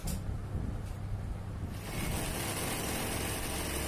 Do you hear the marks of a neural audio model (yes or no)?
no